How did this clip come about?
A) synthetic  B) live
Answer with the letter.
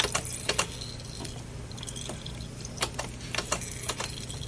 B